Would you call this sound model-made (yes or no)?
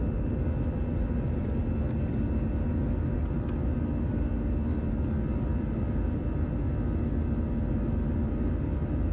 no